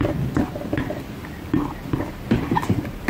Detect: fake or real real